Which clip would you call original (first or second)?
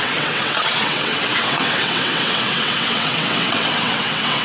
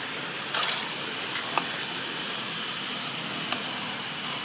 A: second